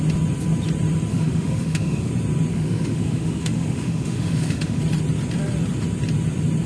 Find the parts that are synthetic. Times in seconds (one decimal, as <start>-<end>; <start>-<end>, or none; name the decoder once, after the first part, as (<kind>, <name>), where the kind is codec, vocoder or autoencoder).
1.1-2.1 (autoencoder, DAC-VAE); 2.5-4.8